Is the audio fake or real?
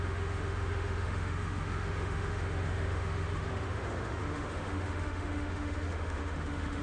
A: fake